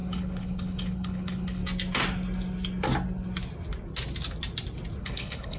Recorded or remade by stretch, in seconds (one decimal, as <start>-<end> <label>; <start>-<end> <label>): 0.0-1.6 remade; 1.6-5.0 recorded; 5.0-5.6 remade